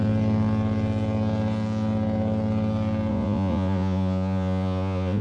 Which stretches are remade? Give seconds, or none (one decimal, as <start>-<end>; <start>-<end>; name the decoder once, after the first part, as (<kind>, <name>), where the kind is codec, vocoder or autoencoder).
3.1-5.2 (vocoder, Vocos)